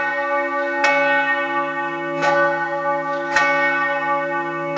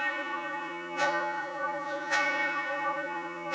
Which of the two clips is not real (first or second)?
second